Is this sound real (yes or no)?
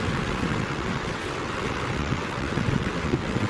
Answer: no